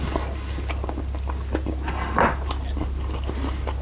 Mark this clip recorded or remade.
recorded